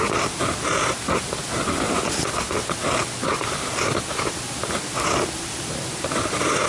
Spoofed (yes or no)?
no